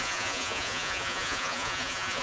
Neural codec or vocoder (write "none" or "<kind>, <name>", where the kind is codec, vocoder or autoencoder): vocoder, Vocos